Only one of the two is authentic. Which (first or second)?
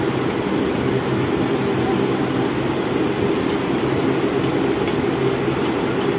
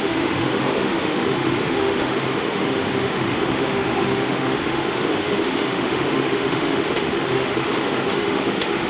first